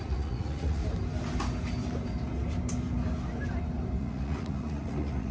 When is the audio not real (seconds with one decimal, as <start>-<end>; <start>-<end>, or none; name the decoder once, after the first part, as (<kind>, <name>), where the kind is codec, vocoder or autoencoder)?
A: 0.0-0.8 (vocoder, Vocos); 4.0-5.3